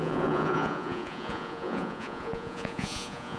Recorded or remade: remade